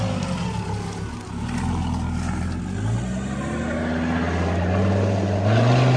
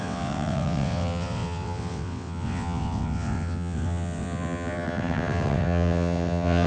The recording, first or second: first